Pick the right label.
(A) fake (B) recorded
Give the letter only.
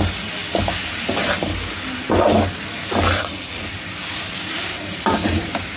B